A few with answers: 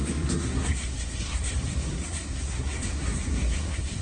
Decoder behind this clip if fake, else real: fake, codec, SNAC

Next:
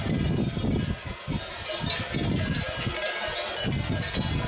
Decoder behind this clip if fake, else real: real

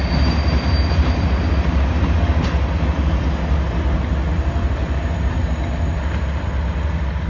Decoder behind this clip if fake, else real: real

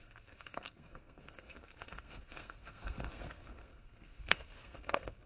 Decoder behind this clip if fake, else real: fake, codec, SNAC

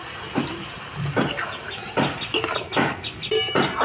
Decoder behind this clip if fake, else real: real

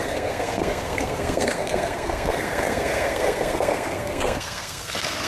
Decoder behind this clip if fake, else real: fake, codec, SNAC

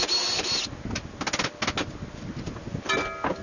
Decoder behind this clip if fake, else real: real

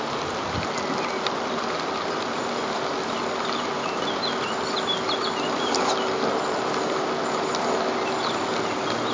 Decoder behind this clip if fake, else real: real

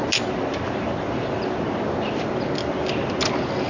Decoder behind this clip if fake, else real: real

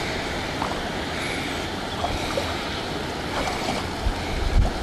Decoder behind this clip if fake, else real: real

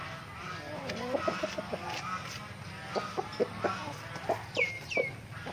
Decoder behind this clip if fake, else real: real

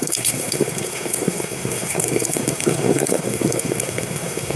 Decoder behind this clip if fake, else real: fake, codec, SNAC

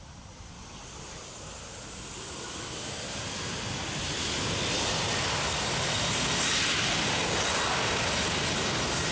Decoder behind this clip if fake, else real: real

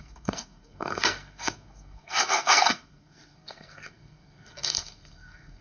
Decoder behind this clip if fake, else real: fake, codec, SNAC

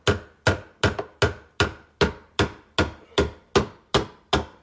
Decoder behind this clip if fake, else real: real